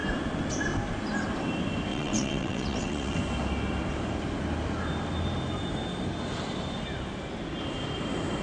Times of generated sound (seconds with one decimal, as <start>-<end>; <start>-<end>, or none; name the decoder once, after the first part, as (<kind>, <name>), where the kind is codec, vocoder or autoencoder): 1.9-3.2 (vocoder, WaveNeXt)